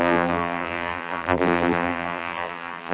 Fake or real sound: fake